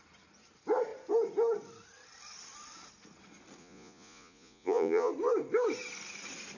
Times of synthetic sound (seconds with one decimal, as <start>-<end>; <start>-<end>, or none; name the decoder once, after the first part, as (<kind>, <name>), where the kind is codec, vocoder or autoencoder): 3.6-5.1 (vocoder, Vocos)